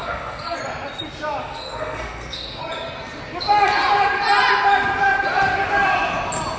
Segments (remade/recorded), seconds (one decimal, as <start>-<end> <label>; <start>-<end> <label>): 0.0-0.6 remade; 0.6-1.4 recorded; 1.4-2.6 remade; 2.6-6.6 recorded